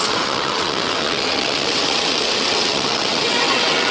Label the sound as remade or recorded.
remade